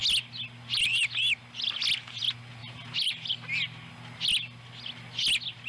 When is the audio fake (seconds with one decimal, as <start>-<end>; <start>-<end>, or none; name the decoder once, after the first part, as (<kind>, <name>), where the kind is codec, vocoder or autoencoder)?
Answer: 2.6-3.3 (vocoder, BigVGAN v2)